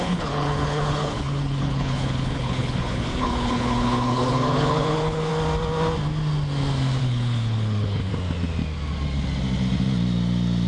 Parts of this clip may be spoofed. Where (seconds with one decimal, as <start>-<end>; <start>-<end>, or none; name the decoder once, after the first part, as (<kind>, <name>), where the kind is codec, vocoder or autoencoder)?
0.0-5.3 (codec, HILCodec); 7.0-8.1